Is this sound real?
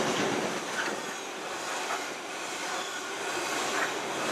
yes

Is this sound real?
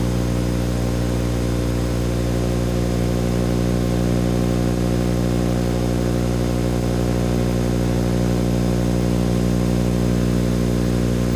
yes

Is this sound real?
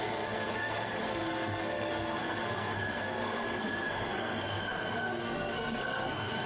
no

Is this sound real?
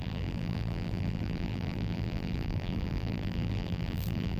no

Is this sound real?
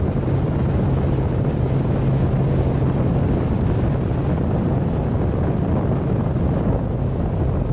yes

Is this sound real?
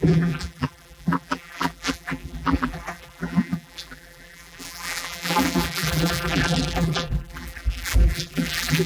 no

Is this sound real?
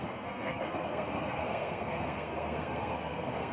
no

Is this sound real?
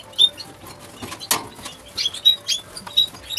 yes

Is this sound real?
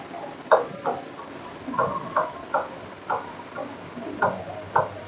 no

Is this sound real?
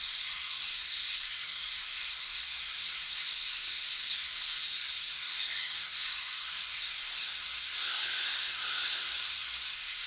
no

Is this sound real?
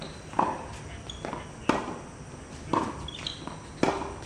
yes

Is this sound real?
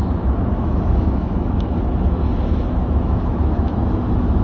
no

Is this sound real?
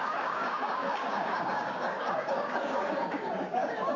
no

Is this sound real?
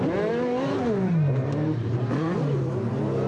no